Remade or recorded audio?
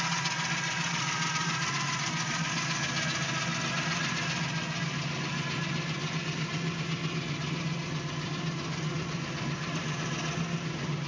recorded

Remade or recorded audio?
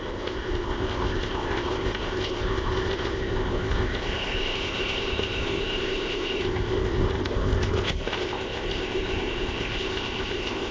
remade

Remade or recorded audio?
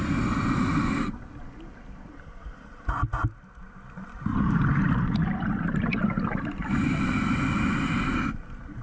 recorded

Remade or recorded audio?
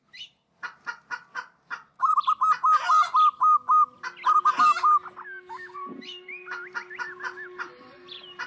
recorded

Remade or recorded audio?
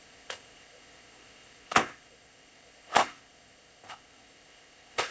remade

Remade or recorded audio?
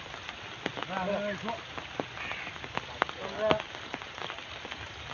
recorded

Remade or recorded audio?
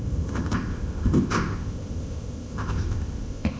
remade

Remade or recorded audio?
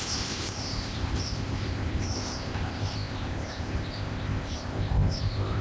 remade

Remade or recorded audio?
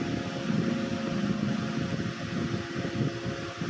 recorded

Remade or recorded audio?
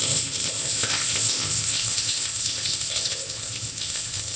remade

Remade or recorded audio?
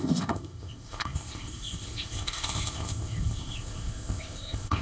remade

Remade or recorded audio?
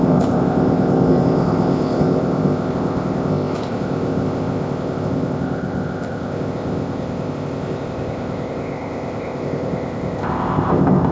remade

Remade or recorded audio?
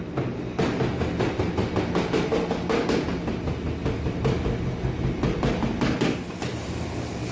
recorded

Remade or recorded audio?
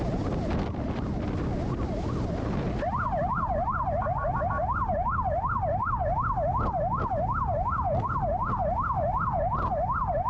recorded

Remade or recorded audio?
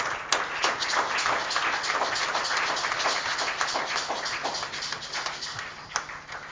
recorded